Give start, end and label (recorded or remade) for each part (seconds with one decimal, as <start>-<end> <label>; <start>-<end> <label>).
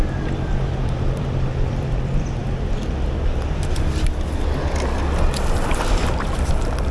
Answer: 0.0-2.4 remade; 2.4-6.5 recorded; 6.5-6.9 remade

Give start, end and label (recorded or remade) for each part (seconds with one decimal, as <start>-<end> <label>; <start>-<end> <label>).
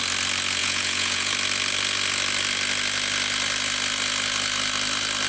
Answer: 0.0-0.6 recorded; 0.6-1.3 remade; 1.3-5.3 recorded